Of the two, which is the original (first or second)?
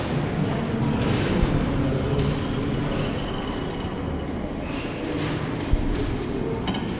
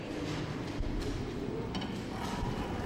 first